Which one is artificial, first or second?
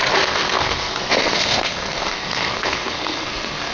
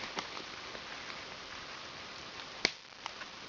first